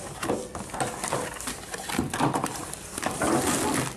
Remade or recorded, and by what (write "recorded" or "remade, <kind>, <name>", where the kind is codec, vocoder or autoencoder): recorded